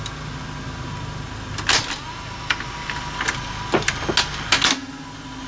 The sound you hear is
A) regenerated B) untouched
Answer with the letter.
B